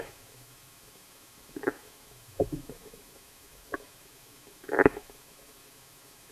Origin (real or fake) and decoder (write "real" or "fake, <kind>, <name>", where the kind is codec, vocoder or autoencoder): fake, autoencoder, DAC-VAE